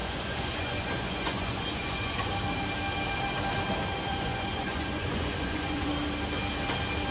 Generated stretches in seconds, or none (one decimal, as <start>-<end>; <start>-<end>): 0.0-2.3; 4.1-5.9